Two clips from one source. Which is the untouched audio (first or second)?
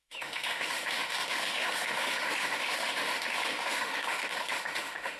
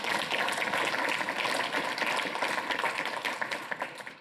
second